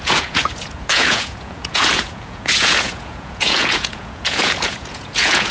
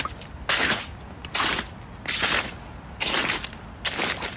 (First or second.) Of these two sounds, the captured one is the second